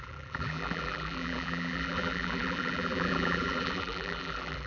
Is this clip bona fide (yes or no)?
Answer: no